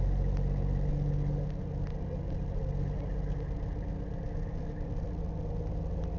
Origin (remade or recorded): recorded